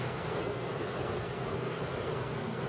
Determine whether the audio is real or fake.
fake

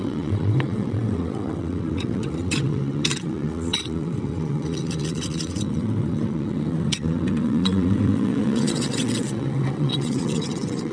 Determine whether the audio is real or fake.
fake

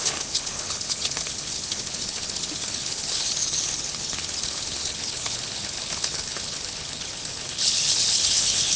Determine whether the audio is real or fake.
fake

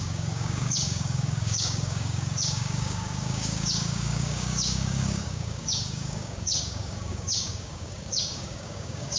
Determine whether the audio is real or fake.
fake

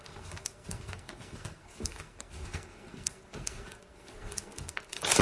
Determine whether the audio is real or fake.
fake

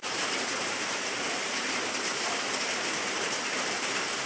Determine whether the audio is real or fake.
fake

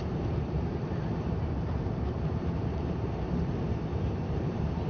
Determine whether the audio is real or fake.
fake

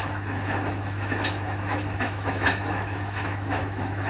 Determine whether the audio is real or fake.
fake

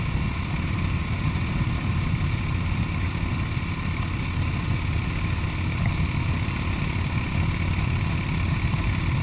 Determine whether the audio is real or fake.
real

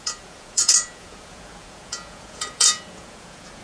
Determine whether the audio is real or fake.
fake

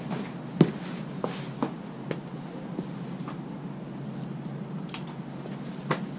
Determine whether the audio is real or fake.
real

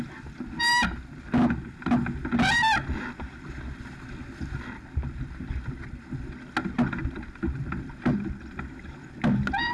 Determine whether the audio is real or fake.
real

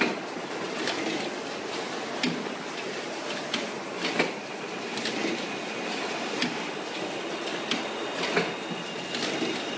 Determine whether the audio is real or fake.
real